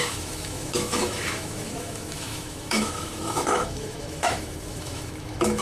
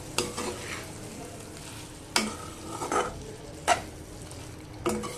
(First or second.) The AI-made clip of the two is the first